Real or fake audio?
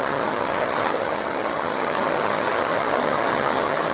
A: fake